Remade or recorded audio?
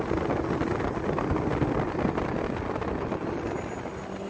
recorded